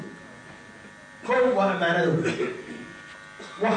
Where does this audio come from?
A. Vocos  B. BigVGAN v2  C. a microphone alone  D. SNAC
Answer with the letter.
C